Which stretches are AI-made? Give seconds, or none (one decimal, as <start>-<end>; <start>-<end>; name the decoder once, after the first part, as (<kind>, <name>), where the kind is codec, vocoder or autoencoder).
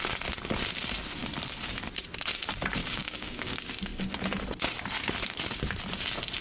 2.8-3.5 (codec, DAC)